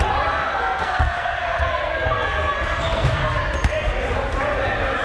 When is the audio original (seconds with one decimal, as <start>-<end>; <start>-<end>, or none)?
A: 0.0-0.4; 3.4-5.0